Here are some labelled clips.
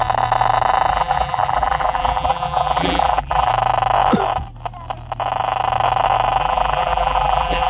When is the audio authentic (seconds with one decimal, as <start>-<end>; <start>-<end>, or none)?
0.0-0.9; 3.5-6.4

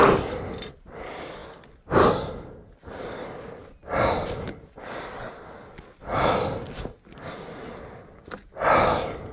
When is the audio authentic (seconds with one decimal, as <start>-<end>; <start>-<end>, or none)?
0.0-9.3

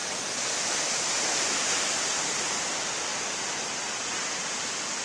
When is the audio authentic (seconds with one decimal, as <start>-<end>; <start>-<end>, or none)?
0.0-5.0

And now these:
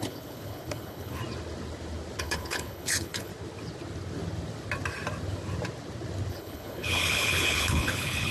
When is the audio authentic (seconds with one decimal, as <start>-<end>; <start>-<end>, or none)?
1.2-2.2; 3.3-6.3

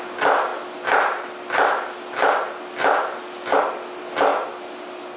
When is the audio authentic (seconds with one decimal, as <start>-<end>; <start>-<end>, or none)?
0.0-5.2

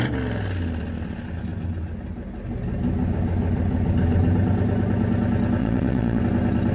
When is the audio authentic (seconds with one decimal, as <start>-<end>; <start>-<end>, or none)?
0.0-5.6; 6.2-6.7